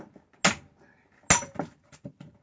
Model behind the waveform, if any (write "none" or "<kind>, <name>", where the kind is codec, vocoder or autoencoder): none